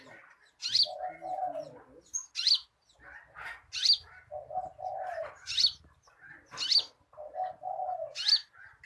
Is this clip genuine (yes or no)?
yes